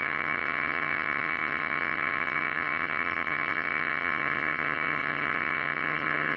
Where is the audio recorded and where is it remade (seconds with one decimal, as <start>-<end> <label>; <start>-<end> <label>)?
0.0-6.4 remade